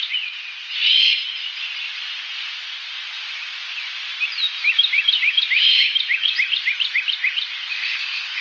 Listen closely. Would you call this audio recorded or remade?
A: recorded